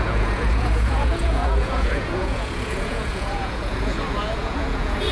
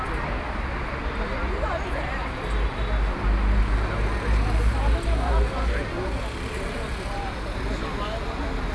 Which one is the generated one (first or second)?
first